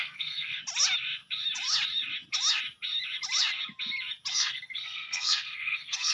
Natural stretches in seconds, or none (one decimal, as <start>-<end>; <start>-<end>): 0.6-4.3

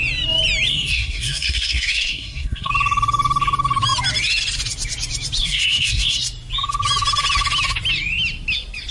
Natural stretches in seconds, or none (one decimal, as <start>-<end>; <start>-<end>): 0.0-0.7; 2.7-5.4; 6.2-8.9

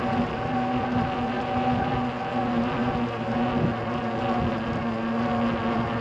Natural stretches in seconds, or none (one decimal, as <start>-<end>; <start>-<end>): 0.0-6.0

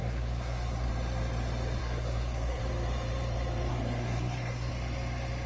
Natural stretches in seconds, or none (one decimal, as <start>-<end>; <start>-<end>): 0.9-1.8; 2.6-3.7; 4.7-5.5